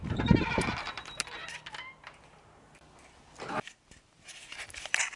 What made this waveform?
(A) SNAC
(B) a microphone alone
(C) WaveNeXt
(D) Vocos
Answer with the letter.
B